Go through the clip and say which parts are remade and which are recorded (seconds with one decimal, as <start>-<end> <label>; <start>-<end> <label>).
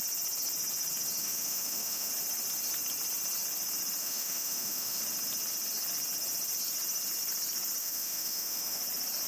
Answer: 0.0-1.2 recorded; 1.2-2.1 remade; 2.1-4.0 recorded; 4.0-5.0 remade; 5.0-7.8 recorded; 7.8-8.8 remade; 8.8-9.3 recorded